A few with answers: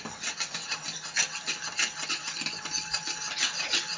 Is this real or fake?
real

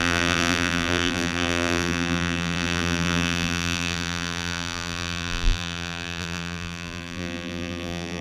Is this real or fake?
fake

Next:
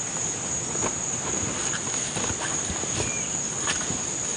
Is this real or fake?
real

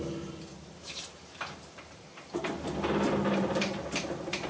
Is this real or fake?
fake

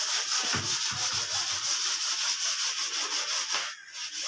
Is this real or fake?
real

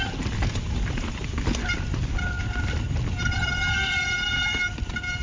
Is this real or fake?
real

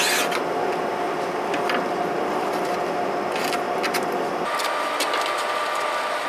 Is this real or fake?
real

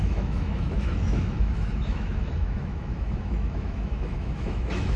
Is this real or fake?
fake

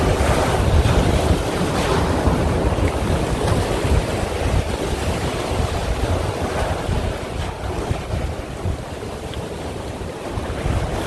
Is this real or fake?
real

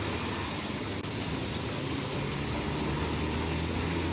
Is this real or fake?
real